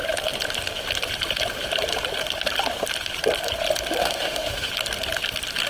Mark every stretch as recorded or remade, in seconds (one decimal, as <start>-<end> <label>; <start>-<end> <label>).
0.0-4.0 recorded; 4.0-4.7 remade; 4.7-5.7 recorded